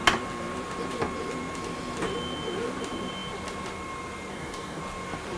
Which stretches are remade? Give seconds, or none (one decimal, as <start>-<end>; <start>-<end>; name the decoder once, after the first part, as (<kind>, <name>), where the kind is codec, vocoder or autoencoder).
4.3-4.8 (codec, DAC)